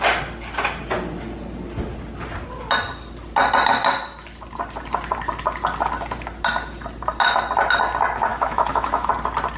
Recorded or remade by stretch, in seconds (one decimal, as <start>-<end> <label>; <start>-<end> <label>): 0.0-8.3 recorded; 8.3-9.1 remade; 9.1-9.6 recorded